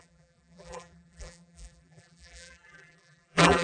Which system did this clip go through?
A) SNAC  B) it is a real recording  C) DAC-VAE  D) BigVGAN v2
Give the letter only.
D